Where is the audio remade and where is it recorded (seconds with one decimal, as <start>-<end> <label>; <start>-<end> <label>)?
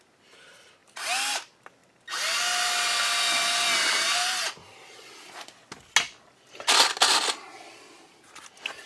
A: 0.0-8.9 recorded